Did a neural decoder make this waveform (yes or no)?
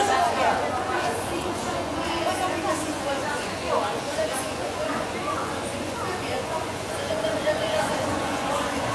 yes